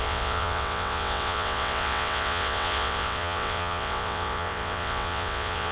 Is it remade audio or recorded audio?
remade